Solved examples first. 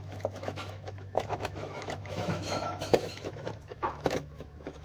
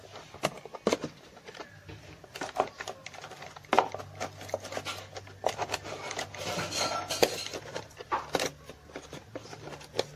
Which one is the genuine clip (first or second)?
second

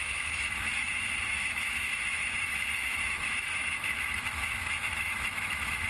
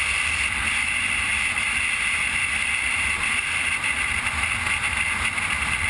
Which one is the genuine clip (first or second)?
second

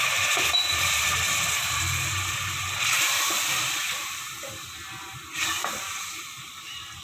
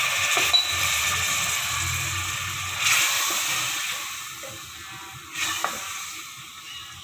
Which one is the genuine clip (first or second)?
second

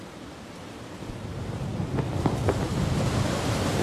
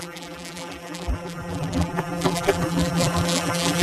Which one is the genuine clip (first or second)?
first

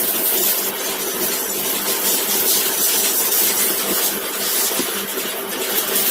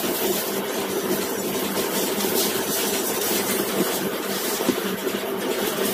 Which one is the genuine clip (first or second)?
first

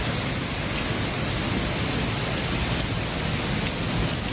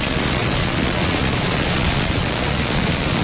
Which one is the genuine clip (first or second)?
first